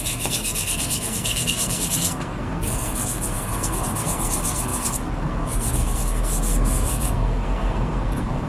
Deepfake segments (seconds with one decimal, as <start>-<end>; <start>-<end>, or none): 0.0-8.5